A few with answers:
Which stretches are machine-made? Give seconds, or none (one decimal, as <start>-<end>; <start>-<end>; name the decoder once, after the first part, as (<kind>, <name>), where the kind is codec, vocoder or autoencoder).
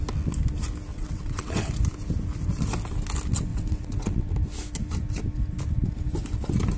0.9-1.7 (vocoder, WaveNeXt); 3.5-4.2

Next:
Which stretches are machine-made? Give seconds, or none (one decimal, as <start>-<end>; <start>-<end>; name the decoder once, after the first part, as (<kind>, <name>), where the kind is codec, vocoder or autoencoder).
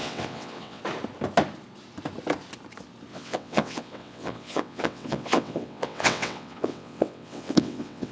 0.0-0.8 (vocoder, WaveNeXt); 3.1-8.1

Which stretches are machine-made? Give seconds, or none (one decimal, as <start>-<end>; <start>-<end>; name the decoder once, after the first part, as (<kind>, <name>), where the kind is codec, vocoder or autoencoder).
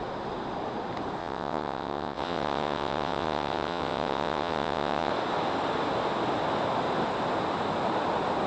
1.2-5.1 (vocoder, WaveNeXt)